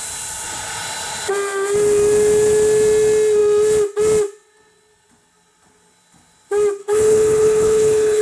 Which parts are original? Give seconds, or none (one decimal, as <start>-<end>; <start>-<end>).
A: 0.0-6.8